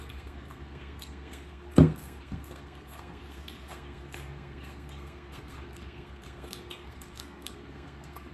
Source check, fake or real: fake